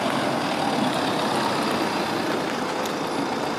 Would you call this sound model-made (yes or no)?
no